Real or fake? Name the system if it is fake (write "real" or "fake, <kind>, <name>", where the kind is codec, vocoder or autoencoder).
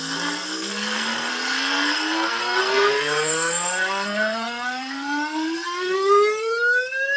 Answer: fake, codec, SNAC